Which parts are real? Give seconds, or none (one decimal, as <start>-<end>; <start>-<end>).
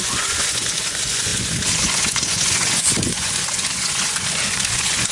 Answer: none